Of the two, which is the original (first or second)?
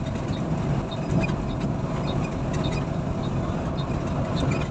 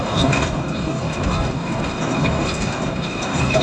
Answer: first